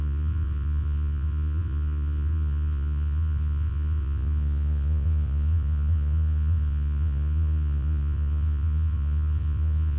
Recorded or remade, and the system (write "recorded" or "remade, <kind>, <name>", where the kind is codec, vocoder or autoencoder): remade, vocoder, Vocos